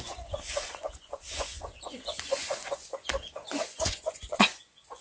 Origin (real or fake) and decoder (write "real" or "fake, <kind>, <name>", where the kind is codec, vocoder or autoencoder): fake, vocoder, Vocos